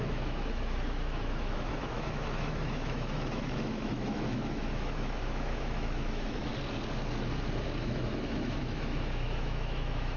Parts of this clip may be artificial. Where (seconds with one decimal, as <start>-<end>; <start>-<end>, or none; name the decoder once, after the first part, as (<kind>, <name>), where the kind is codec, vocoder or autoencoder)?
0.0-6.5 (autoencoder, DAC-VAE); 7.8-10.2